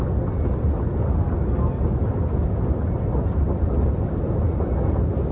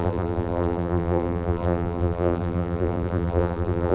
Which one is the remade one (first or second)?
second